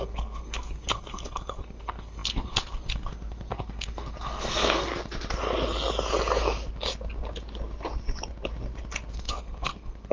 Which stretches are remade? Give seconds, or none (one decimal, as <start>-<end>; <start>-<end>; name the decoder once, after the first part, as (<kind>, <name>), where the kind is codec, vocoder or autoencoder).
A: 0.0-4.9 (codec, SNAC); 9.1-10.1